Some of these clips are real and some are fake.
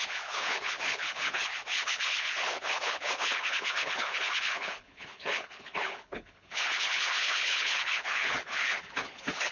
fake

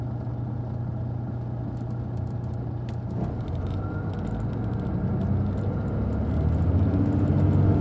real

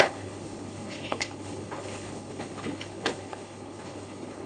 fake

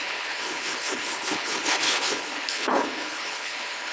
fake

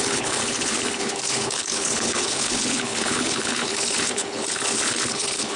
fake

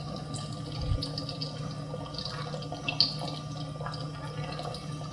real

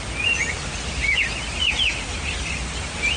real